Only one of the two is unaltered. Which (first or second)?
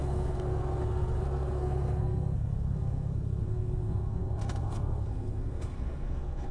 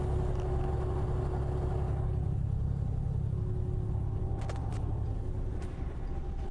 second